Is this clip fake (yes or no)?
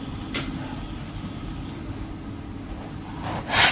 no